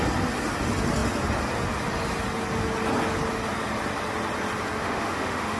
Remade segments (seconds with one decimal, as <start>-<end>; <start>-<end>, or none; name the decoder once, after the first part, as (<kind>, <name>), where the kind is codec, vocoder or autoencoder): 4.8-5.6 (autoencoder, DAC-VAE)

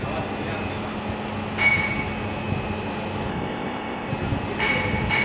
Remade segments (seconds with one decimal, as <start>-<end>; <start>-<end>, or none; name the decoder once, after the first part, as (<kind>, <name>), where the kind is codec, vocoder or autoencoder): 3.3-4.1 (codec, ZipCodec)

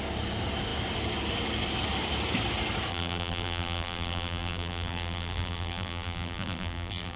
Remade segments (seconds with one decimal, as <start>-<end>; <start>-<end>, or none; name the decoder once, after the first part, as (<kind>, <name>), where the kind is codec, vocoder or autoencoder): 2.9-7.2 (vocoder, BigVGAN v2)

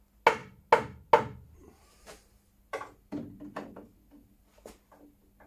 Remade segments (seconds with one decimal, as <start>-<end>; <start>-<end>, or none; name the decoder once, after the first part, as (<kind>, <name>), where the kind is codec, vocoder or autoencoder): none

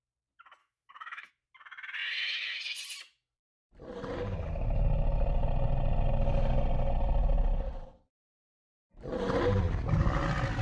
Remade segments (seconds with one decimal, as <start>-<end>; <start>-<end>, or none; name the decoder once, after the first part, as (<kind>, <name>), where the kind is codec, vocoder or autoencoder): 0.6-1.3 (autoencoder, DAC-VAE)

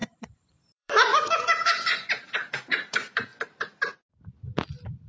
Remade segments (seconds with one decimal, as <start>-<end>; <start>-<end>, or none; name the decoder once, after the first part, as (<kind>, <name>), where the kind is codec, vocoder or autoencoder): 0.0-3.3 (vocoder, BigVGAN v2)

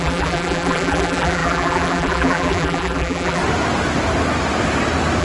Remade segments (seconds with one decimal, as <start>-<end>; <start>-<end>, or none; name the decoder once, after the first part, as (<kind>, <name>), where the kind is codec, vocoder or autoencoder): 0.0-3.4 (vocoder, BigVGAN v2)

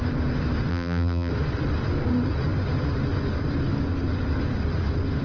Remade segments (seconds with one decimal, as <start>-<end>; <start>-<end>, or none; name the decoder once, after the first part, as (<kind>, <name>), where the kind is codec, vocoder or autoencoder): 0.7-1.3 (vocoder, BigVGAN v2)